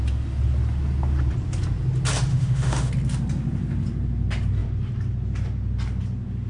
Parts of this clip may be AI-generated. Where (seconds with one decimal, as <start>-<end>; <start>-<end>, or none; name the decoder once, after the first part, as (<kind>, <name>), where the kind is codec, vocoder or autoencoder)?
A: 2.3-2.9 (autoencoder, DAC-VAE)